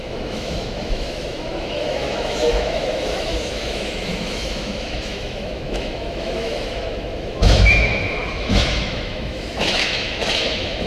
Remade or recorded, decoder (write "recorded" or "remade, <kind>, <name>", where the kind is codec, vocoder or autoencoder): remade, autoencoder, DAC-VAE